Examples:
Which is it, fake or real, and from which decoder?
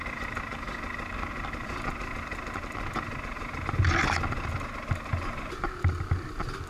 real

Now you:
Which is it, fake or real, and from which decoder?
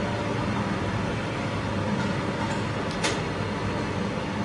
real